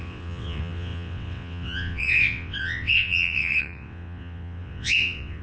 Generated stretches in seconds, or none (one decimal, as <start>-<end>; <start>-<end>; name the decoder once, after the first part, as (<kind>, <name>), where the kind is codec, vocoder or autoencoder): 0.0-5.4 (vocoder, WaveNeXt)